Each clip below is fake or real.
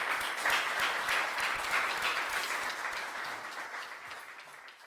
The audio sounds real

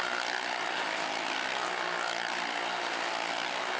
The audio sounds real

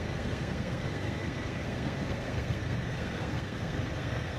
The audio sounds fake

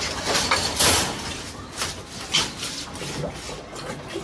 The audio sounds real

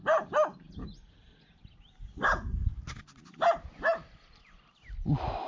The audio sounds real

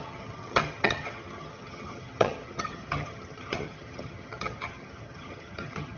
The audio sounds fake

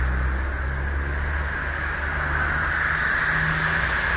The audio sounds real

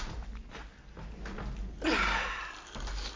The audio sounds real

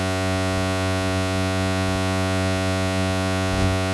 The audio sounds fake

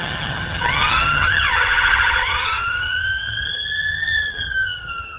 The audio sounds fake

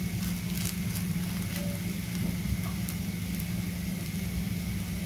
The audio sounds real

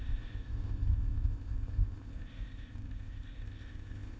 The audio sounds fake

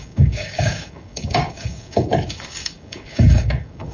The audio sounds fake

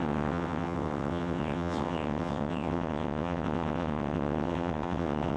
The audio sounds fake